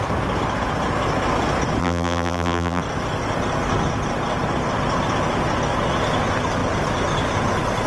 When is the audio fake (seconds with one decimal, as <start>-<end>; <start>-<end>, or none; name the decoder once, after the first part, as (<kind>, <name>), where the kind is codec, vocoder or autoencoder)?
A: 1.8-2.8 (vocoder, BigVGAN v2)